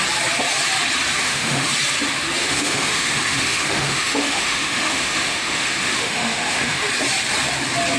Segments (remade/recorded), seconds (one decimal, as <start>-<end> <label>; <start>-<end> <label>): 0.0-1.2 recorded; 1.2-1.7 remade; 1.7-2.4 recorded; 2.4-6.9 remade; 6.9-8.0 recorded